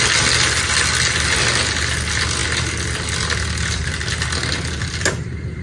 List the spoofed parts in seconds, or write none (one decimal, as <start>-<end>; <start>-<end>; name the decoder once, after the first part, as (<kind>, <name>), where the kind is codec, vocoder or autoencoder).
none